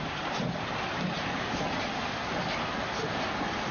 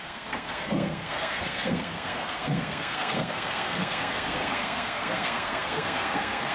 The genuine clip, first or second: first